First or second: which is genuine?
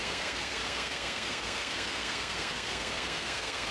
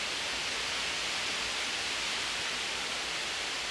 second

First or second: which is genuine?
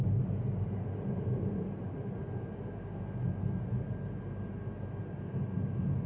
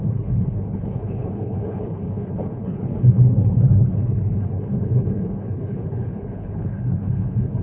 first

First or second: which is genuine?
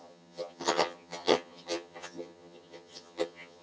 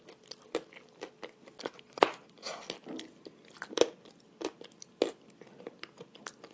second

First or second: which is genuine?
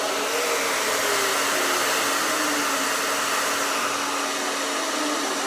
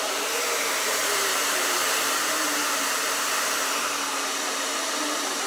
first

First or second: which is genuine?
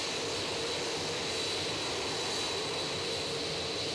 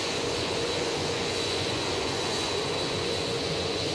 first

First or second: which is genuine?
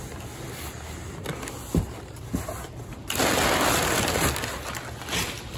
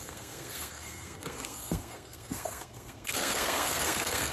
first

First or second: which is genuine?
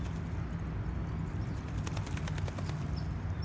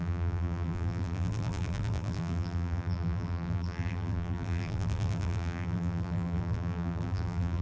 first